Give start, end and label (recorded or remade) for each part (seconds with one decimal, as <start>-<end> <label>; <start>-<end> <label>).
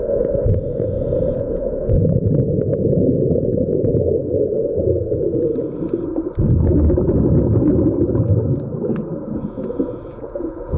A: 0.0-4.6 remade; 4.6-9.2 recorded; 9.2-10.8 remade